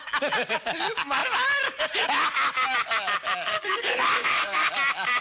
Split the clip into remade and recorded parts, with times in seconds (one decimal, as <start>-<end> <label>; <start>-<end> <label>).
0.0-3.5 recorded; 3.5-4.7 remade; 4.7-5.2 recorded